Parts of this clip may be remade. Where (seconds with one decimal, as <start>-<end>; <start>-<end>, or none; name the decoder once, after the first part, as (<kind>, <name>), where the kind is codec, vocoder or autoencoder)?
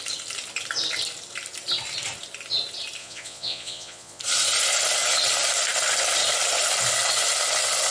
3.0-4.2 (vocoder, Vocos)